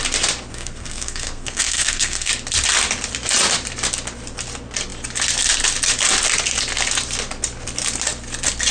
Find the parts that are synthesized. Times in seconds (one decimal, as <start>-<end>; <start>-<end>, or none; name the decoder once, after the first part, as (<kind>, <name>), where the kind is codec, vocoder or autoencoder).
0.5-2.3 (codec, SNAC)